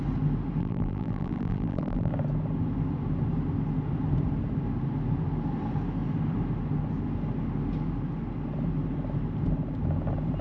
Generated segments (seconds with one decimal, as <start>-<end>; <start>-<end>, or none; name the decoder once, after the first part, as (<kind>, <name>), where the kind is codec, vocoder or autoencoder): 0.6-2.1 (vocoder, BigVGAN v2)